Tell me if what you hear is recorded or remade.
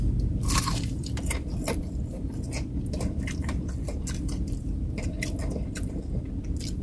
remade